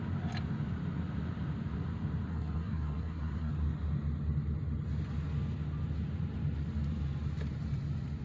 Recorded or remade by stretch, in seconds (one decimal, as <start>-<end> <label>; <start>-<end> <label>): 0.0-2.3 recorded; 2.3-3.5 remade; 3.5-8.2 recorded